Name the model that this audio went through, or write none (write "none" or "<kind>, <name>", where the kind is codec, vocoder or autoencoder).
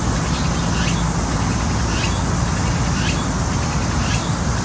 none